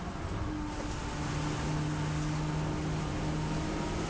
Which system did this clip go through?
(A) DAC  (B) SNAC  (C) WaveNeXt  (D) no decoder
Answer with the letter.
D